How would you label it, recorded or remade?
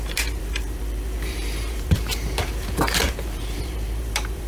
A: remade